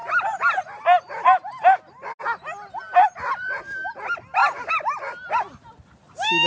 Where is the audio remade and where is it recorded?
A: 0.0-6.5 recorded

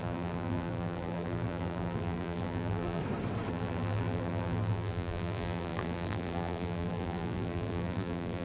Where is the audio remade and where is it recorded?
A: 0.0-3.0 remade; 3.0-3.5 recorded; 3.5-8.4 remade

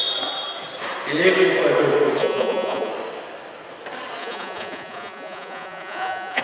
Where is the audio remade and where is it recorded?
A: 0.0-2.2 recorded; 2.2-2.9 remade; 2.9-4.2 recorded; 4.2-6.4 remade

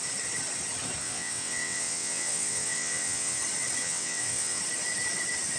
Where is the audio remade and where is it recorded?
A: 0.0-1.0 recorded; 1.0-3.4 remade; 3.4-3.8 recorded; 3.8-4.6 remade; 4.6-5.6 recorded